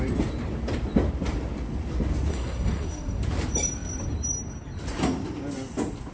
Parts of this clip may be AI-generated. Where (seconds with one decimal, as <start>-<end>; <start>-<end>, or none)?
2.3-3.2